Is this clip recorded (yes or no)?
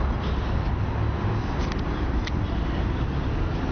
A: yes